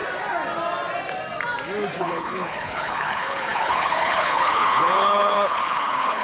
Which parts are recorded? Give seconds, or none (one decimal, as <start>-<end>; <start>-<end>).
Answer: 0.0-2.0